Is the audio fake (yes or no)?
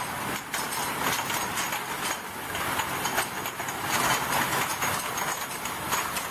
no